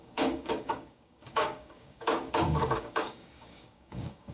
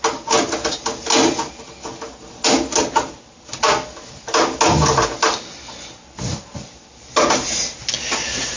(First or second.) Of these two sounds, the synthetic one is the first